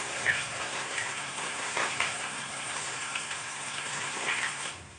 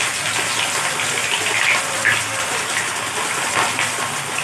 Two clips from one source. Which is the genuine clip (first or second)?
second